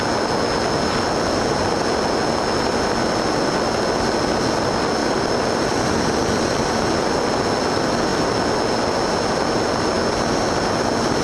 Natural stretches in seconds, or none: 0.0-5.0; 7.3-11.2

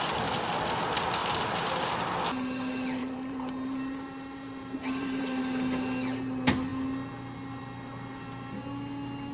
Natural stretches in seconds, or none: 0.0-1.2; 1.9-3.0; 5.4-9.3

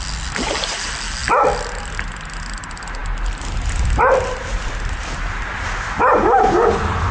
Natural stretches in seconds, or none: 0.0-7.1

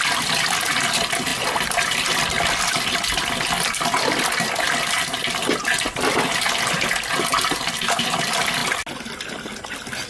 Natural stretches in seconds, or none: 0.0-10.1

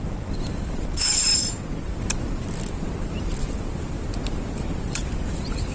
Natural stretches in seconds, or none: 1.3-2.0; 4.1-4.8

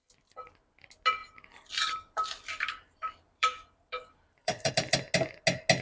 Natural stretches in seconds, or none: 0.0-1.2; 4.7-5.8